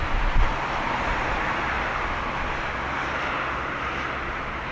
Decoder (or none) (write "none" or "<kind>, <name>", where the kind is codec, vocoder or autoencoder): none